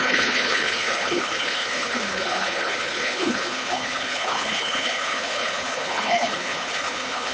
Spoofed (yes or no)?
yes